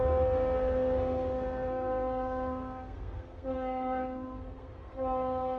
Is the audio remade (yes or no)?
yes